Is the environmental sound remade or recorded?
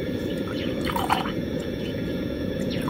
remade